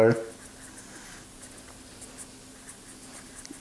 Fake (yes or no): no